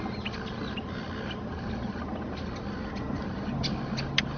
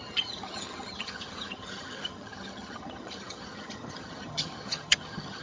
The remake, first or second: second